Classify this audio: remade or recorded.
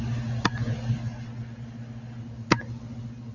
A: recorded